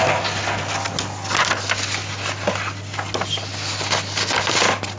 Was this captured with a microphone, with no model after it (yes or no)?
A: yes